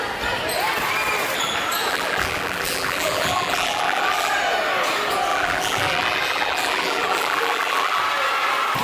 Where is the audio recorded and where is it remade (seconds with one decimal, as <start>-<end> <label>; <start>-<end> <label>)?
0.0-1.9 recorded; 1.9-4.3 remade; 4.3-5.3 recorded; 5.3-8.0 remade; 8.0-8.8 recorded